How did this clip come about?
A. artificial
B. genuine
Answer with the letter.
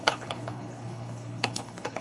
A